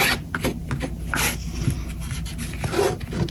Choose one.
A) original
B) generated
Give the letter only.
A